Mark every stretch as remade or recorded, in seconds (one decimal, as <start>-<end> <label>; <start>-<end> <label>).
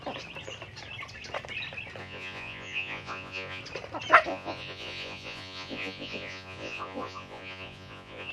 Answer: 0.0-2.0 recorded; 2.0-3.6 remade; 3.6-4.3 recorded; 4.3-8.3 remade